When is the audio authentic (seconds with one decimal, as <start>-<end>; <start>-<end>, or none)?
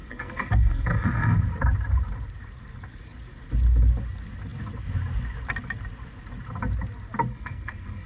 1.4-7.3